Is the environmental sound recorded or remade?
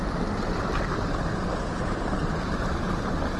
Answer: recorded